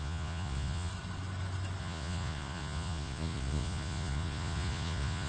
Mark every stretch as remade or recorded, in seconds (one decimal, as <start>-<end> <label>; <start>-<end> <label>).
0.0-0.9 remade; 0.9-1.8 recorded; 1.8-5.3 remade